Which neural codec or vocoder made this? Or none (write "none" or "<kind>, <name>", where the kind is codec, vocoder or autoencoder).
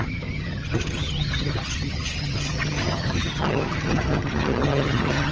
vocoder, HiFi-GAN